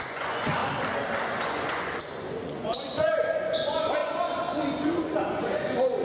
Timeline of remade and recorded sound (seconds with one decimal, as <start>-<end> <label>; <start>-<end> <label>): 0.0-0.6 remade; 0.6-1.2 recorded; 1.2-6.0 remade